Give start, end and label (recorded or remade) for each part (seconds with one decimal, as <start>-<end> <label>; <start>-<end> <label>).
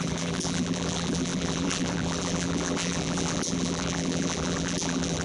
0.0-5.2 remade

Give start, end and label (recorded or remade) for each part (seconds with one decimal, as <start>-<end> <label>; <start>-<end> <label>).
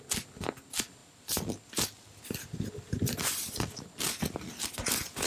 0.0-5.3 recorded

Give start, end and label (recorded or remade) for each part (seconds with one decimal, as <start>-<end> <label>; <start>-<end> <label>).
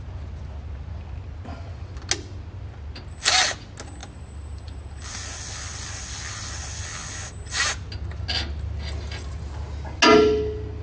0.0-4.0 recorded; 4.0-6.8 remade; 6.8-10.8 recorded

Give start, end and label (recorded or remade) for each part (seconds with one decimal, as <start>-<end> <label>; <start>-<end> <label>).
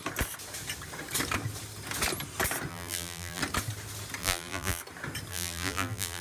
0.0-2.7 recorded; 2.7-3.4 remade; 3.4-4.2 recorded; 4.2-4.8 remade; 4.8-5.3 recorded; 5.3-6.2 remade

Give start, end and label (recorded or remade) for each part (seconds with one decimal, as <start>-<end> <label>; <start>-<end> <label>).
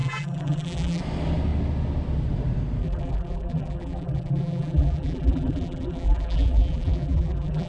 0.0-1.0 remade; 1.0-2.8 recorded; 2.8-7.7 remade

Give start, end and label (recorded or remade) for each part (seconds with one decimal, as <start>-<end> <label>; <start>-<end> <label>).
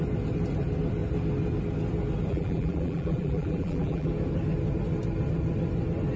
0.0-2.3 recorded; 2.3-4.1 remade; 4.1-6.2 recorded